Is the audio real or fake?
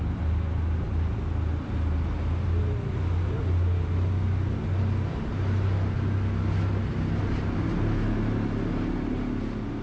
real